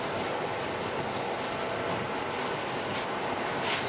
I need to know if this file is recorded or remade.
remade